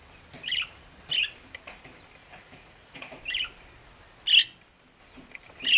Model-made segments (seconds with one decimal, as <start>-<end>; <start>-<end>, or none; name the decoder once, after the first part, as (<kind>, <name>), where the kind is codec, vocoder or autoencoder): 2.2-3.2 (vocoder, Vocos)